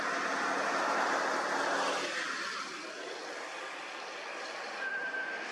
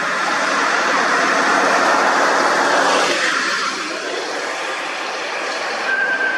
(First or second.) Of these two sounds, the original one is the first